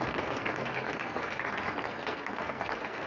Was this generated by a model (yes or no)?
yes